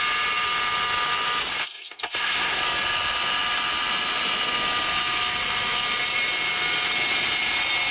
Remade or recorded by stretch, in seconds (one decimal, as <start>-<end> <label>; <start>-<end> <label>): 0.0-1.5 recorded; 1.5-2.6 remade; 2.6-7.9 recorded